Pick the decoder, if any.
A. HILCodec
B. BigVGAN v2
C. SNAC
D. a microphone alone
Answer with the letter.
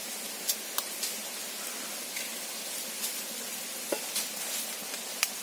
D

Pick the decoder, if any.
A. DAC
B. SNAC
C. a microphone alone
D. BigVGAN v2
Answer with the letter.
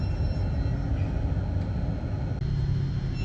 C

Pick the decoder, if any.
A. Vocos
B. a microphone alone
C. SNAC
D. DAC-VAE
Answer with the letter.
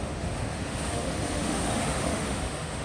D